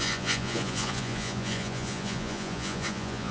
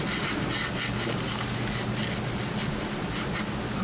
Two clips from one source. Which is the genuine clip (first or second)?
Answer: second